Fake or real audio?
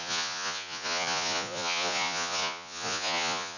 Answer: fake